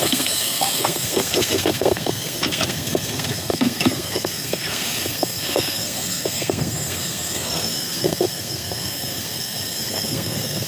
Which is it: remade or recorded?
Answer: remade